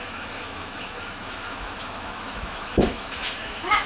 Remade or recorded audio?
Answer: remade